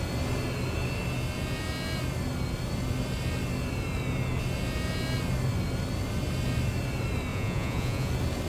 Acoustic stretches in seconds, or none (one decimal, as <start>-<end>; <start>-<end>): 0.0-7.3; 8.1-8.5